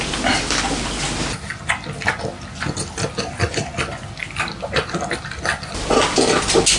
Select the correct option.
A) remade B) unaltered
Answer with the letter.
B